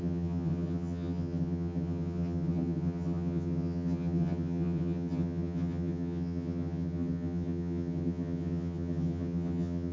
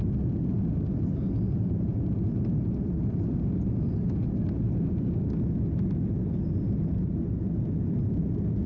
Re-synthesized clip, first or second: first